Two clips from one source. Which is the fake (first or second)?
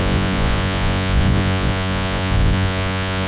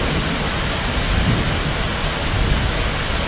first